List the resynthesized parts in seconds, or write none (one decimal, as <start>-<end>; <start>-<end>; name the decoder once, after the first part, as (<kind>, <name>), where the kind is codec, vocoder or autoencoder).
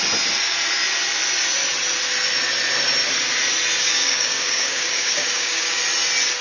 3.8-5.8 (codec, DAC)